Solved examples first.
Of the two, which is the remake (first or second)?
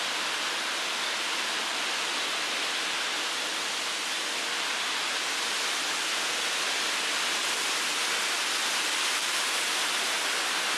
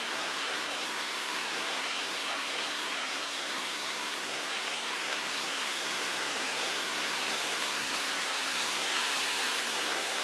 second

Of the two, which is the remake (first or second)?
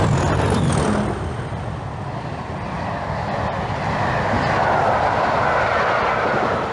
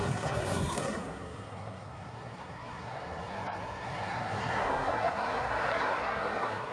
second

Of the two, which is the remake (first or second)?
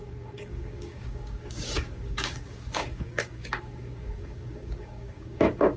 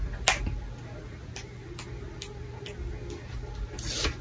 first